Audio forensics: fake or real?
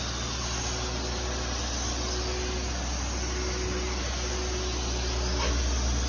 real